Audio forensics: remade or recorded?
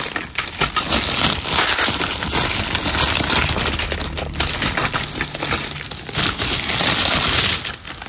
recorded